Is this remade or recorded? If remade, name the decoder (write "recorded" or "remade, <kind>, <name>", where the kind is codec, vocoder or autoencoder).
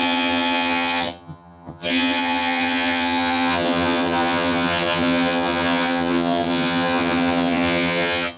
remade, vocoder, HiFi-GAN